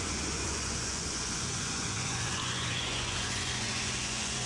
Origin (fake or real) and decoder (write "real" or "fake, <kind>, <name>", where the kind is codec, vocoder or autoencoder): fake, vocoder, Vocos